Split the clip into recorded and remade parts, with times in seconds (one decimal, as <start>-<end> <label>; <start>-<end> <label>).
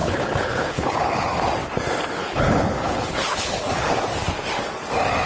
0.0-1.3 remade; 1.3-2.2 recorded; 2.2-4.0 remade; 4.0-5.3 recorded